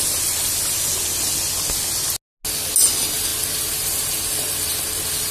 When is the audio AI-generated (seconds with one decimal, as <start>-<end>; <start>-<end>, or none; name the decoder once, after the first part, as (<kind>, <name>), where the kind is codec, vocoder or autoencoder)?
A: none